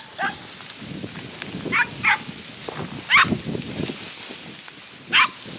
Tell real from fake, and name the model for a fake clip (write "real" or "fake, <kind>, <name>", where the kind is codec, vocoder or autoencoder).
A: real